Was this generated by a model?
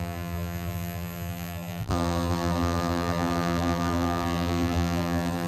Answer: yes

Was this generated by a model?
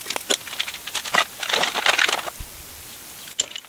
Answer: no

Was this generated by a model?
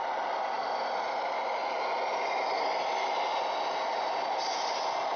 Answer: no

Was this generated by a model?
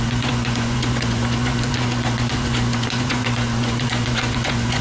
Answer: yes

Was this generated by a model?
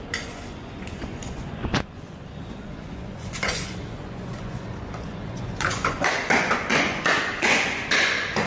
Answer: yes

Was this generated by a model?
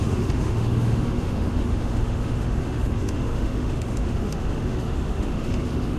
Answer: yes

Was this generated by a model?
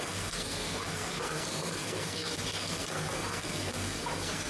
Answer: yes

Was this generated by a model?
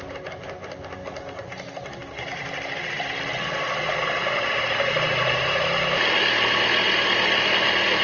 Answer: no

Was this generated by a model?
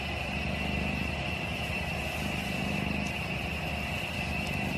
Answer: no